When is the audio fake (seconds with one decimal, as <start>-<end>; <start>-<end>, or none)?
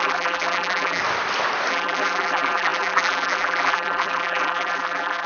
0.0-1.0; 1.7-5.3